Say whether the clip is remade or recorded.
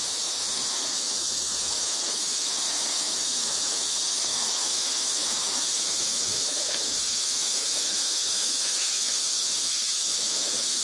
remade